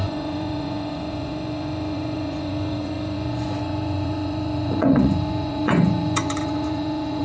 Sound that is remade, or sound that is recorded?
remade